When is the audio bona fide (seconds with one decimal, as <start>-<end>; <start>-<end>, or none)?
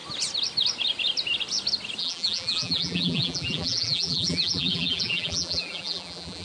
0.0-2.0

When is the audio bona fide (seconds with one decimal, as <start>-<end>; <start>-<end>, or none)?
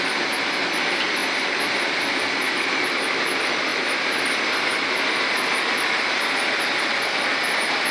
0.0-7.9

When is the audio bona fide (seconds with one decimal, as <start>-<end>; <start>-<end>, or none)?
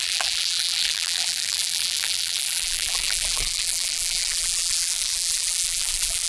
none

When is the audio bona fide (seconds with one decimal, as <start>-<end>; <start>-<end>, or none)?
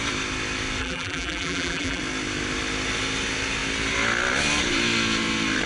0.0-0.8; 2.0-5.7